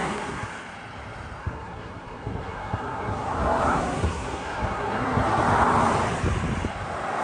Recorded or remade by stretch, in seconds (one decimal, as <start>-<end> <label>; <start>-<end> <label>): 0.0-0.5 remade; 0.5-1.4 recorded; 1.4-5.4 remade; 5.4-7.2 recorded